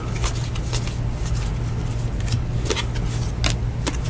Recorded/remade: recorded